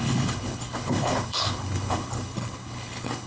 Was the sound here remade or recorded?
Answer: remade